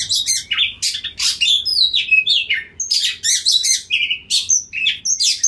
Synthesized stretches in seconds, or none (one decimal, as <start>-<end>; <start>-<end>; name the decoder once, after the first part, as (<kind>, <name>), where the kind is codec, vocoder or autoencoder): none